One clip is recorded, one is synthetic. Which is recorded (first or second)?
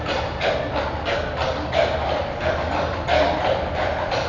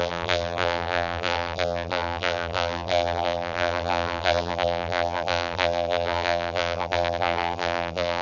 first